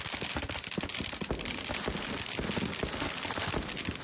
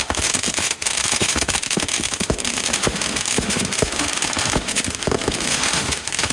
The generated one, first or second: second